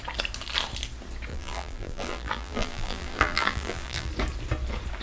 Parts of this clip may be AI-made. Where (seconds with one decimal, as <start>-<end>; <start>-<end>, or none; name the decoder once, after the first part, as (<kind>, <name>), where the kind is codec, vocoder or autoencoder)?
1.3-4.1 (vocoder, BigVGAN v2)